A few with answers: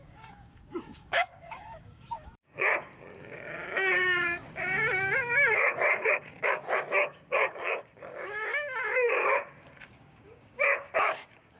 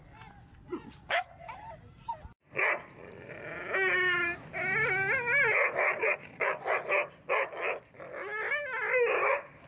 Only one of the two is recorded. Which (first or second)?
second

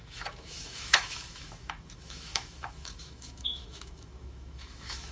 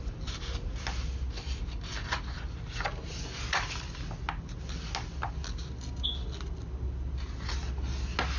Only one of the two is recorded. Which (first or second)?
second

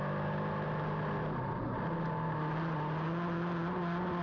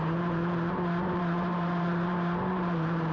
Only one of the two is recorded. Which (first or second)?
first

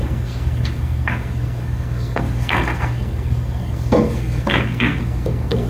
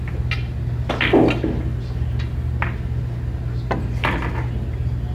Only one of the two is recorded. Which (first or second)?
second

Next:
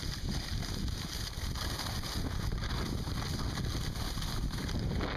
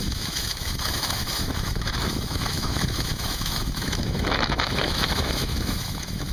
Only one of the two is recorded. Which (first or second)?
first